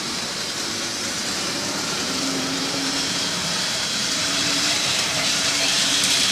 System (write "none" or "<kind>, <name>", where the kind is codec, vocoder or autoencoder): vocoder, BigVGAN v2